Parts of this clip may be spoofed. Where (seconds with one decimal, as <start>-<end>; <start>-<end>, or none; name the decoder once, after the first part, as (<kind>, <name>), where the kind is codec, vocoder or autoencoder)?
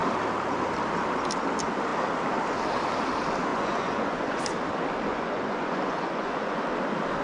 3.5-4.4 (vocoder, Vocos); 5.1-6.6